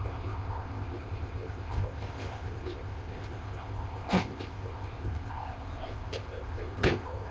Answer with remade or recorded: remade